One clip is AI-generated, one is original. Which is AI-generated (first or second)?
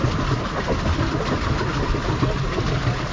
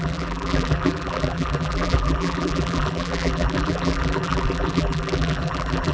second